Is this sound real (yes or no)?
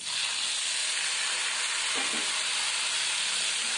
yes